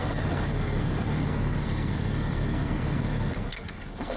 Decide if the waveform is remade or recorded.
remade